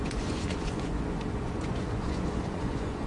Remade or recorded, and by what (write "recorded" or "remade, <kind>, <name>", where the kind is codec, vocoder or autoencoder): remade, vocoder, Vocos